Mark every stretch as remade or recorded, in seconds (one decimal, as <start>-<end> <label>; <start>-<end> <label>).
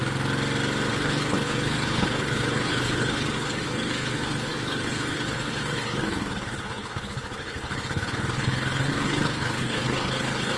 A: 0.0-0.9 recorded; 0.9-10.6 remade